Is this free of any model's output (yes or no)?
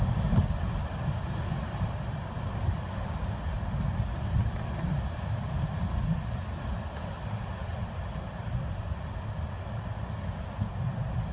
yes